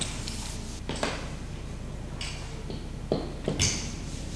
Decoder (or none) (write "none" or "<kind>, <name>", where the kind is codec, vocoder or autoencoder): none